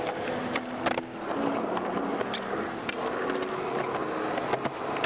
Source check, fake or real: real